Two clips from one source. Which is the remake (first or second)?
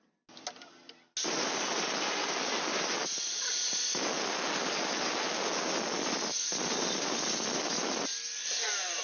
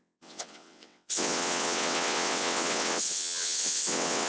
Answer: second